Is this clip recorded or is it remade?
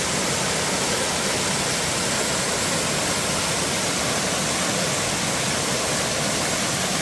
recorded